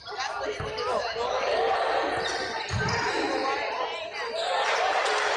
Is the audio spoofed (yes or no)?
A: no